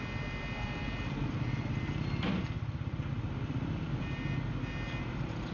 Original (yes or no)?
yes